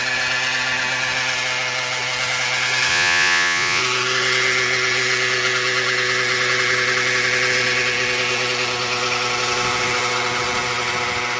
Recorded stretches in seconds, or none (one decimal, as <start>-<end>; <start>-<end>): 0.0-2.9; 3.8-11.4

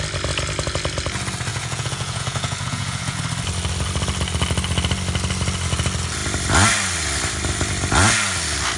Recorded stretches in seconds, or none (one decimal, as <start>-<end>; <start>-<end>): 0.0-1.5; 3.2-8.8

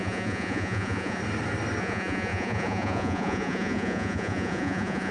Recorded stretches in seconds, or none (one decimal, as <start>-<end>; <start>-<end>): 1.2-1.8

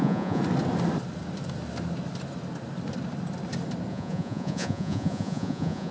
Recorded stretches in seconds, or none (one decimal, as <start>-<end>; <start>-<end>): 0.4-3.9